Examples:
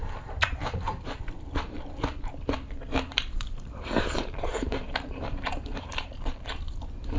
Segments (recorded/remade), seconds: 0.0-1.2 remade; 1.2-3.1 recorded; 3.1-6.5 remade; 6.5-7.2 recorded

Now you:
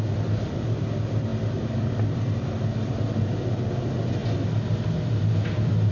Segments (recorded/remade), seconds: 0.0-5.9 recorded

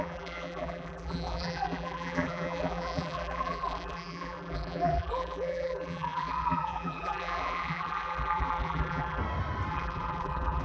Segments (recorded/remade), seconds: 0.0-9.2 remade; 9.2-9.7 recorded; 9.7-10.6 remade

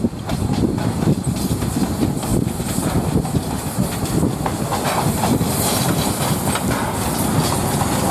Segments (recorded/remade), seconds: 0.0-2.3 recorded; 2.3-3.4 remade; 3.4-4.7 recorded; 4.7-6.2 remade; 6.2-8.1 recorded

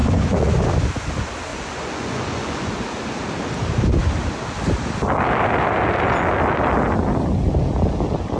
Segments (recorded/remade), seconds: 0.0-0.6 remade; 0.6-1.5 recorded; 1.5-2.8 remade; 2.8-8.4 recorded